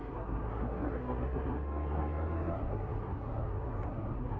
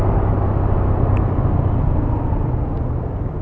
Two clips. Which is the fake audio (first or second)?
first